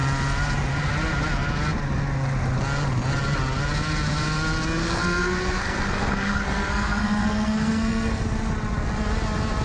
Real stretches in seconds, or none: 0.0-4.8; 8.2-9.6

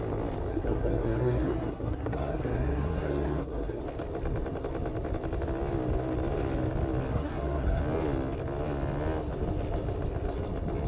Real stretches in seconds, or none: 0.0-0.5; 3.8-7.1; 7.8-10.9

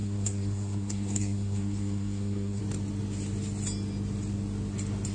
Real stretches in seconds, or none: 2.6-5.1

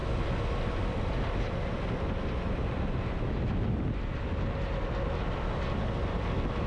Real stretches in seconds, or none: 0.0-6.7

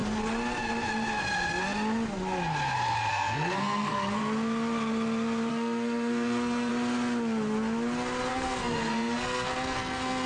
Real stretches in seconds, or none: 0.0-3.1; 4.2-5.5; 6.7-8.3

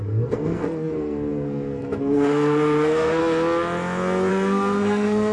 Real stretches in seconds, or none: 3.2-4.3

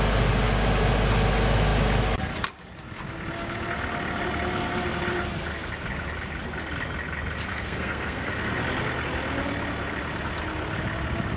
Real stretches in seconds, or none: 0.0-7.5; 8.3-11.4

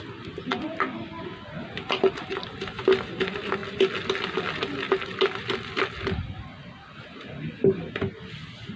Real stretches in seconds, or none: 0.0-8.8